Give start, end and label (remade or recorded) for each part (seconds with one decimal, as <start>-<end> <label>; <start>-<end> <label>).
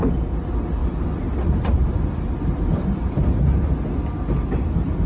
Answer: 0.0-5.1 recorded